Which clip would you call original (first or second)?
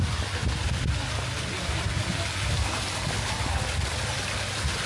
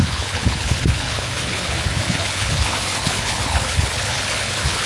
first